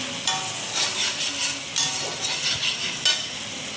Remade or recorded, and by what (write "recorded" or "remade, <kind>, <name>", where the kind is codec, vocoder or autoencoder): recorded